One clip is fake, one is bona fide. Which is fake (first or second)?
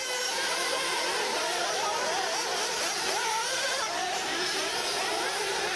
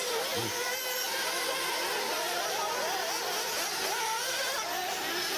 first